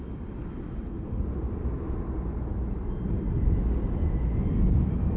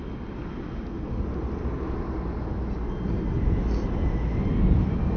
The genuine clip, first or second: second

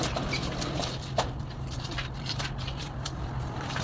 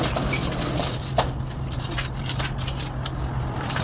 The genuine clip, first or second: second